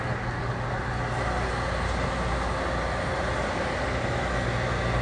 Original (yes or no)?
yes